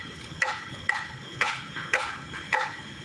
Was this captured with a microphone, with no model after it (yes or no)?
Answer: no